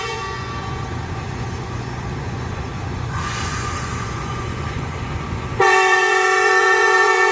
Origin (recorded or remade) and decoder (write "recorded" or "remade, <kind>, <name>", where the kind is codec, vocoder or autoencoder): remade, vocoder, Vocos